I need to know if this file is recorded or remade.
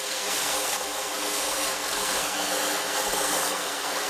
remade